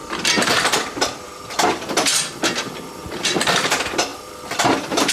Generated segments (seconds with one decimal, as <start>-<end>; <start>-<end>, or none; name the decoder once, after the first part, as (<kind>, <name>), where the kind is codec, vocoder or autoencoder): 0.0-5.1 (vocoder, BigVGAN v2)